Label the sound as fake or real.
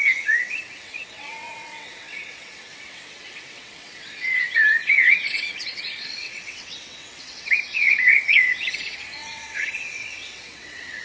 fake